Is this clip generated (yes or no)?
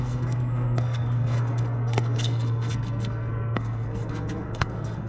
yes